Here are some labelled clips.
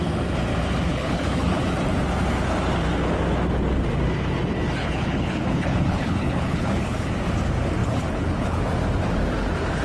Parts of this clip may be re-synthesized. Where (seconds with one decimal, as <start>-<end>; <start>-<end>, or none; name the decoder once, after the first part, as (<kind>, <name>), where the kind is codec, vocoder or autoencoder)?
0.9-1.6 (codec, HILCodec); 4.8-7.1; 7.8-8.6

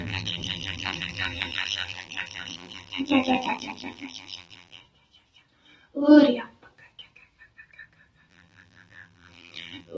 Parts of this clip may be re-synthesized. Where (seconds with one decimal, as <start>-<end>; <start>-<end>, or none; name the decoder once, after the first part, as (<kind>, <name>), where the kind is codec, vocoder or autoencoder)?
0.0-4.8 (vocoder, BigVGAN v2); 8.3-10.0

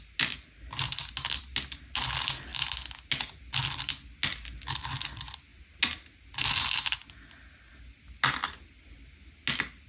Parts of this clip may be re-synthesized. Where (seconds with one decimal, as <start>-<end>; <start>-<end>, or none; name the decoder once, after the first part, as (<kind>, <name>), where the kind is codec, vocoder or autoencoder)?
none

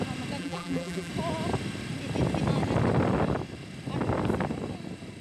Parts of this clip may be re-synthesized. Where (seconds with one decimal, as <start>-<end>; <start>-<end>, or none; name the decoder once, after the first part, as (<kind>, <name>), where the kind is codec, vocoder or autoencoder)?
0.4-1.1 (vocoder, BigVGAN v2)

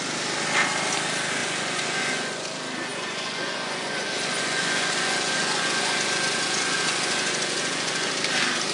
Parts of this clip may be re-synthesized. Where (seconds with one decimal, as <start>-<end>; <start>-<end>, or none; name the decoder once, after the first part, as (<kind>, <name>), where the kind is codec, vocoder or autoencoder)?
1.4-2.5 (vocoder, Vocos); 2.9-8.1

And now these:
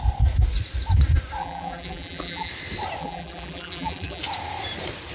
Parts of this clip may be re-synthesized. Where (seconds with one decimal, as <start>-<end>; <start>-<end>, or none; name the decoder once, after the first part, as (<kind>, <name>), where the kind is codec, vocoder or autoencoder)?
1.4-2.5 (vocoder, BigVGAN v2); 3.0-4.2